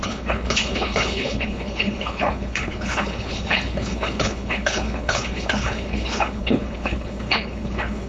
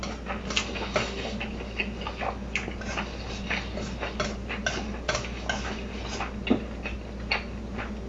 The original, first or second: second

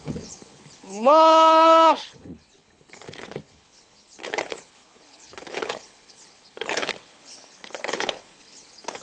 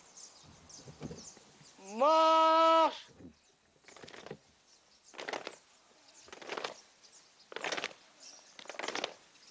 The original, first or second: second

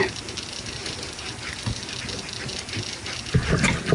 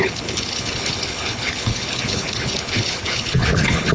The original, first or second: first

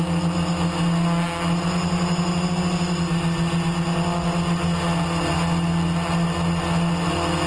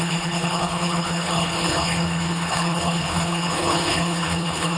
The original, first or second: first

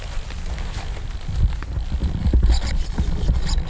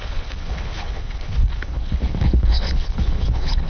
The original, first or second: first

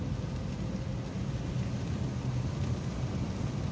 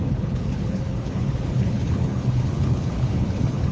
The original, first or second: first